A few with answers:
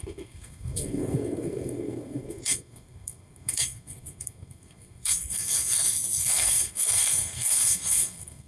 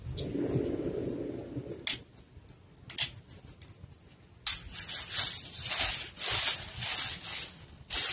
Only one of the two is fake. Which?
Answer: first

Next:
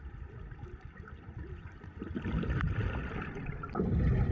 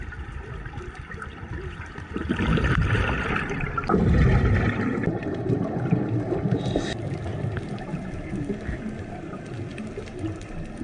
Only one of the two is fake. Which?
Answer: first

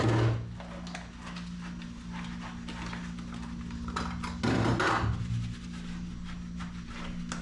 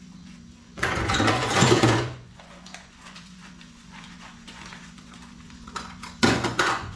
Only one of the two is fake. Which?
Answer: second